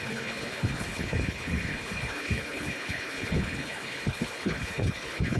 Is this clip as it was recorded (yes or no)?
no